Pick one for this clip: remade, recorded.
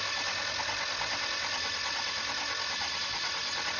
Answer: recorded